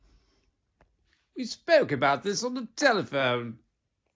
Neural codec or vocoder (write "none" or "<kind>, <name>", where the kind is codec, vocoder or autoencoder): none